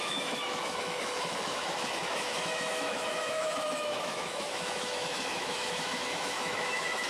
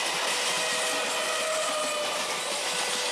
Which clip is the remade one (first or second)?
first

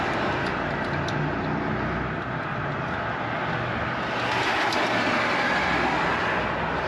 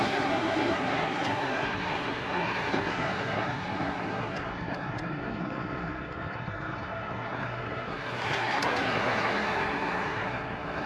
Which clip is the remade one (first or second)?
second